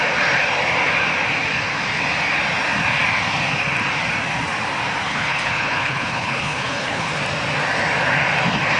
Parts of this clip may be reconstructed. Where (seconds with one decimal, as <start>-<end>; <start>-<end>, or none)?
5.1-7.2